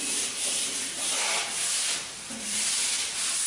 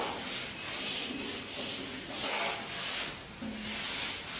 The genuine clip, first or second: second